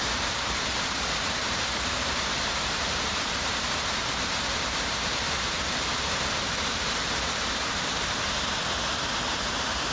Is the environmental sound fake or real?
fake